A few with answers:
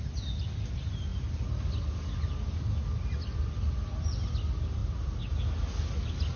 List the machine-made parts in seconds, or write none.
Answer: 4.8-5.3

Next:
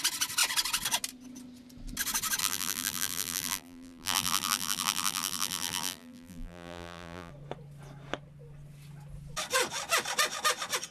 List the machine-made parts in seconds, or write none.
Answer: 2.4-7.3

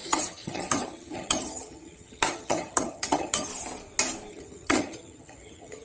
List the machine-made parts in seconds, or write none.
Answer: 0.0-3.5; 4.3-5.8

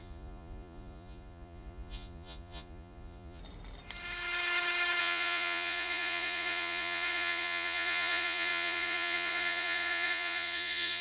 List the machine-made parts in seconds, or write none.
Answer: 0.0-3.4; 5.0-11.0

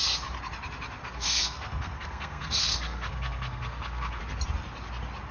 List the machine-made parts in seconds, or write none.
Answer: 1.0-4.2